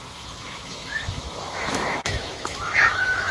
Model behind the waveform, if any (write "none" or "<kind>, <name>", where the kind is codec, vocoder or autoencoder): autoencoder, DAC-VAE